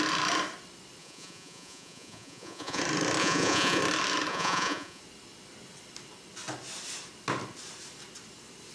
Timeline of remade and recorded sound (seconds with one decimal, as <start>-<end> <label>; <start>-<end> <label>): 0.0-1.0 recorded; 1.0-2.8 remade; 2.8-3.2 recorded; 3.2-3.8 remade; 3.8-4.3 recorded; 4.3-5.0 remade; 5.0-8.7 recorded